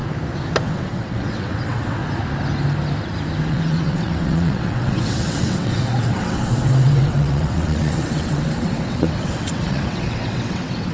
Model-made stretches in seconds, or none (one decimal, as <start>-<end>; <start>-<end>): 0.6-2.0; 3.5-10.9